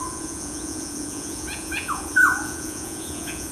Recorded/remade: remade